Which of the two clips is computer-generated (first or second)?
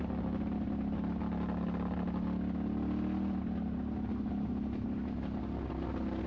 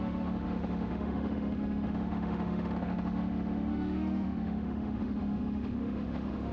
second